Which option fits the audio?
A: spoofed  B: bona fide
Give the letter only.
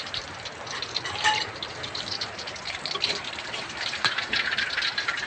A